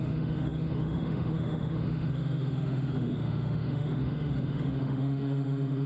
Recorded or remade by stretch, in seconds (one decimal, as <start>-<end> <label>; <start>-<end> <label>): 0.0-5.9 remade